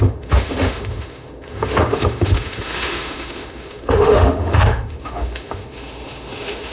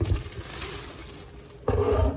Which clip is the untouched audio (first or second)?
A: second